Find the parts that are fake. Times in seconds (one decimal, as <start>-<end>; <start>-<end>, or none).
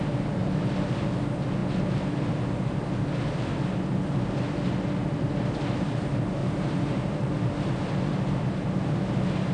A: 6.4-7.3